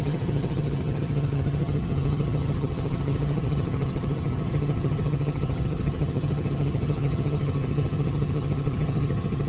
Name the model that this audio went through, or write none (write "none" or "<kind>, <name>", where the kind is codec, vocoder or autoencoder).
vocoder, HiFi-GAN